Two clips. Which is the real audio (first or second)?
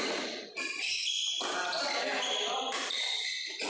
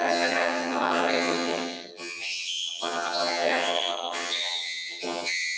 first